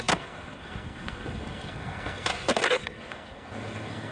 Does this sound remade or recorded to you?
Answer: remade